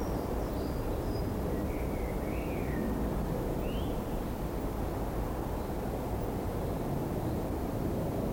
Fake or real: fake